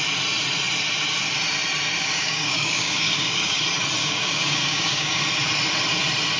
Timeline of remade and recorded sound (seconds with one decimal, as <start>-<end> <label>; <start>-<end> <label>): 0.0-2.0 recorded; 2.0-3.6 remade; 3.6-4.0 recorded; 4.0-5.2 remade; 5.2-6.4 recorded